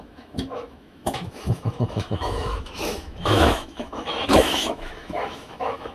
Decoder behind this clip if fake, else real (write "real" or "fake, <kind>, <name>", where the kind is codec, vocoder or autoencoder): fake, autoencoder, DAC-VAE